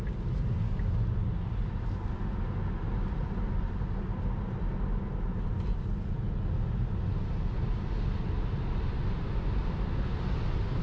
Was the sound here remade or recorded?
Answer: recorded